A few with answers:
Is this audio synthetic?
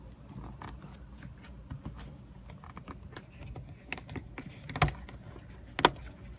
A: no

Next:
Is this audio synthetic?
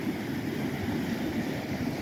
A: no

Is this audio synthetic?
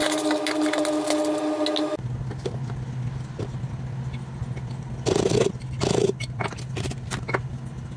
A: no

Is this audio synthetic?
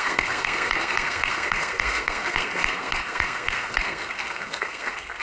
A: yes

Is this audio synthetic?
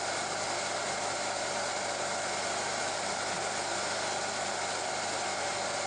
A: yes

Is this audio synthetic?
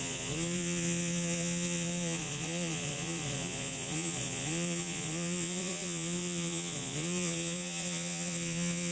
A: yes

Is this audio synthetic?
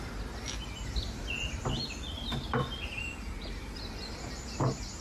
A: no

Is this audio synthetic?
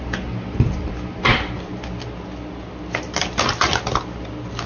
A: no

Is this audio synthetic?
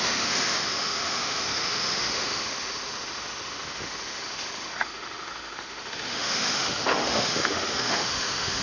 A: yes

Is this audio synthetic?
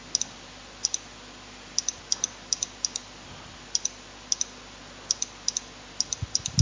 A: no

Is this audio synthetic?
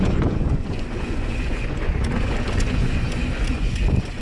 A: yes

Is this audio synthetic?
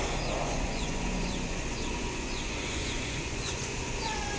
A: yes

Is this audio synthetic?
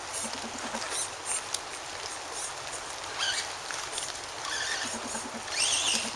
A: no